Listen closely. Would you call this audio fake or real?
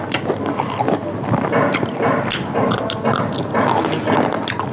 real